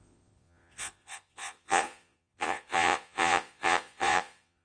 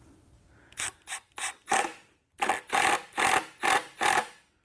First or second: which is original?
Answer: second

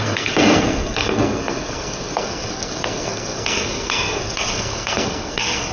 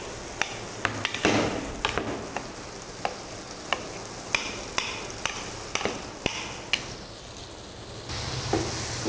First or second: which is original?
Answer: second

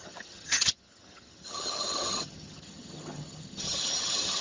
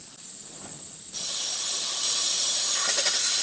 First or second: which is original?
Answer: second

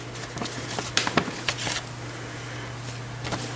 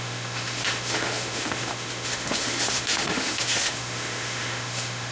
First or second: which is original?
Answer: first